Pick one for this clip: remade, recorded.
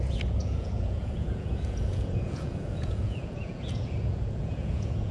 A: remade